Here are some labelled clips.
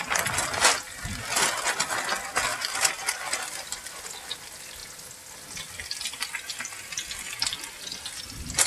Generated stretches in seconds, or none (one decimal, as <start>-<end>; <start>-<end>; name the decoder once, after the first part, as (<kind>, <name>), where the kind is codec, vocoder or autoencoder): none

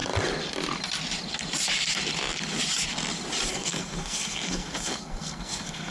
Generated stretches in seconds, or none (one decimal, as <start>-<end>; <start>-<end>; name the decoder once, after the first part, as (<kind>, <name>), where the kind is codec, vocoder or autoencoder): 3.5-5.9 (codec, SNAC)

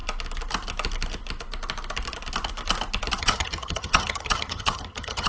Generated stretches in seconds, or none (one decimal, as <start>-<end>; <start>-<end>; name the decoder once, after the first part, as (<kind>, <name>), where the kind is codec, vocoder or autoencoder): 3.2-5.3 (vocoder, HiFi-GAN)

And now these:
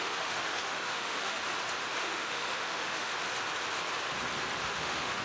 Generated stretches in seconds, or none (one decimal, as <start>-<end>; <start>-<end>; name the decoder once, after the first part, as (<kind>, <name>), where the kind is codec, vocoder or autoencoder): 0.0-1.4 (autoencoder, DAC-VAE); 2.0-3.1; 4.6-5.2